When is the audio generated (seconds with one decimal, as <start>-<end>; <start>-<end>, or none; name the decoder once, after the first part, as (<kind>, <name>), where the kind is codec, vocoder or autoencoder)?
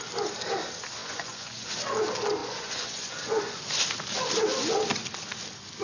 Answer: 1.0-1.7 (vocoder, Vocos); 2.4-3.6